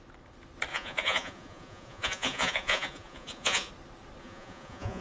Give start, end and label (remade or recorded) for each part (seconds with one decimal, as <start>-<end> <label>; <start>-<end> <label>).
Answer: 0.0-0.7 recorded; 0.7-3.7 remade; 3.7-4.2 recorded; 4.2-5.0 remade